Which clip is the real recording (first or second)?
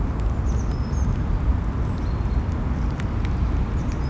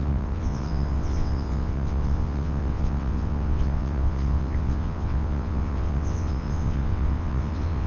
first